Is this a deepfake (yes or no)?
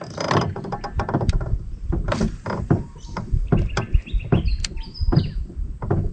yes